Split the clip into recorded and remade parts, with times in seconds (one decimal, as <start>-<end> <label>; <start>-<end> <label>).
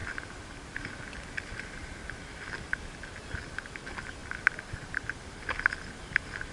0.0-6.5 recorded